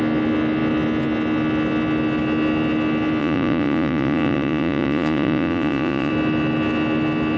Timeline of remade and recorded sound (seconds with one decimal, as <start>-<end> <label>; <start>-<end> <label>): 0.0-3.2 recorded; 3.2-6.1 remade; 6.1-7.4 recorded